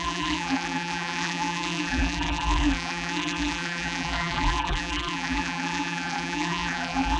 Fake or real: fake